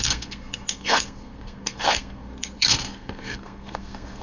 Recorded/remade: remade